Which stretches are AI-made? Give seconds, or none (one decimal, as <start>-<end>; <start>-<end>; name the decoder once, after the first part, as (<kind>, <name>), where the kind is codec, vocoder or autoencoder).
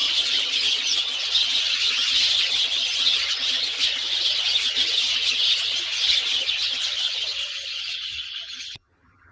0.0-9.3 (vocoder, HiFi-GAN)